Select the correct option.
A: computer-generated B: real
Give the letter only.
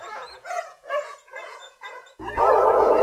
A